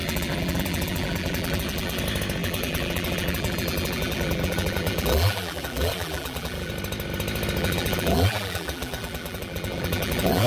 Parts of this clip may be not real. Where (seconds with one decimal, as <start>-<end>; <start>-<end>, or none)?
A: 0.0-2.0; 2.4-6.7; 7.6-10.5